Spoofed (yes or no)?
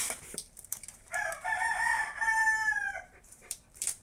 yes